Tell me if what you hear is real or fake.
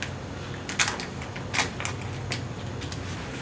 real